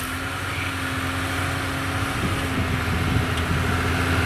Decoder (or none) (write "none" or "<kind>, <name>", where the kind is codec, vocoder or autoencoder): none